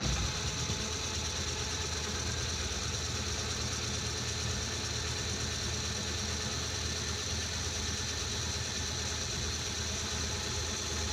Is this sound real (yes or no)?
yes